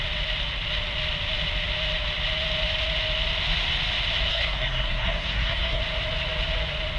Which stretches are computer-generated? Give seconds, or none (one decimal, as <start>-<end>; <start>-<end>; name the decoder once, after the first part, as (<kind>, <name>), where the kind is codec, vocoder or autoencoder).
4.3-5.8 (codec, SNAC)